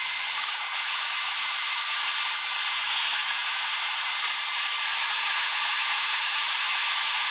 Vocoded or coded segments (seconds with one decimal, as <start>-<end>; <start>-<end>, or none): 0.0-2.0; 2.7-4.1; 5.0-7.3